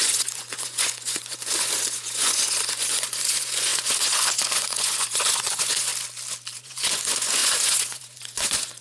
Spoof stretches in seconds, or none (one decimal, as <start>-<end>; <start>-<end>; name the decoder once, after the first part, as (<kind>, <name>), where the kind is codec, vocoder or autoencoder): 0.0-5.9 (vocoder, Vocos); 6.5-8.8